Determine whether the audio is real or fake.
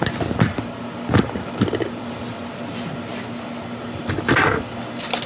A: real